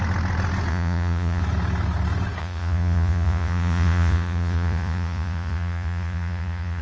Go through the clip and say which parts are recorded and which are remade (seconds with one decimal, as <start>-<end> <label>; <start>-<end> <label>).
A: 0.0-0.7 recorded; 0.7-1.4 remade; 1.4-2.4 recorded; 2.4-6.8 remade